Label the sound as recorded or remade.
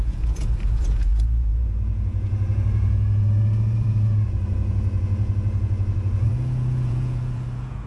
remade